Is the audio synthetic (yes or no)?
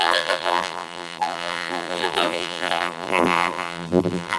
yes